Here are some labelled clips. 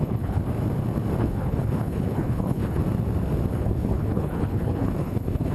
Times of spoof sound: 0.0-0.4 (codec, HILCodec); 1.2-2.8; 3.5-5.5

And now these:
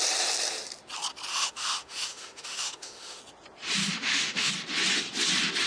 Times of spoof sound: 1.3-3.2 (autoencoder, DAC-VAE); 3.8-4.5